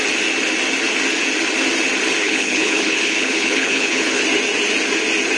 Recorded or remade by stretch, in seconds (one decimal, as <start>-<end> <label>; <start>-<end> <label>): 0.0-2.2 recorded; 2.2-4.2 remade; 4.2-5.4 recorded